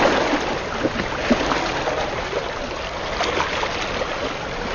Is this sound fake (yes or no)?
no